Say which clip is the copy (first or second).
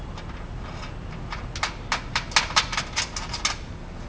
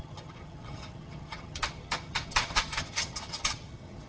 second